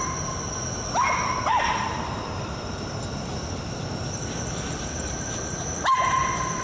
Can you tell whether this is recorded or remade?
recorded